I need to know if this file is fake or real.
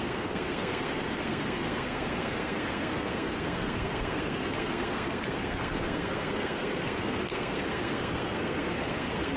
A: fake